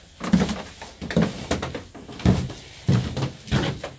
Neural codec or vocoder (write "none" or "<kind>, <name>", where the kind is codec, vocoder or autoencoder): none